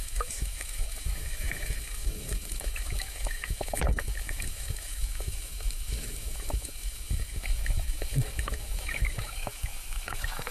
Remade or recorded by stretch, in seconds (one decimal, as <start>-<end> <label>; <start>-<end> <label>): 0.0-10.5 remade